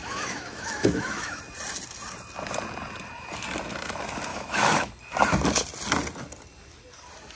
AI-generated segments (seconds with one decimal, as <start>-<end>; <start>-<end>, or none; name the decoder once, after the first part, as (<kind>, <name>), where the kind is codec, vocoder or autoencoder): 0.0-1.4 (autoencoder, DAC-VAE); 4.3-4.9